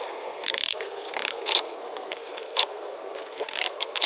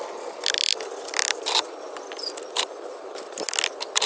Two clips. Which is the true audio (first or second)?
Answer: second